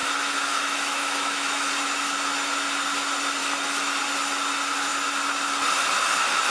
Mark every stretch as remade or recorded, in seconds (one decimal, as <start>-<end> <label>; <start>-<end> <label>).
0.0-1.7 remade; 1.7-3.4 recorded; 3.4-4.0 remade; 4.0-6.5 recorded